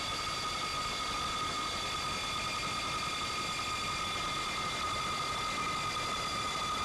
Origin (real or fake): real